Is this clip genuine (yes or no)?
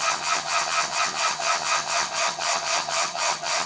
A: no